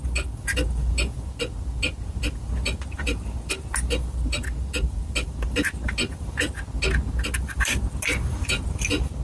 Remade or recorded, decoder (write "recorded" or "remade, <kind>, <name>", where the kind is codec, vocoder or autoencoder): recorded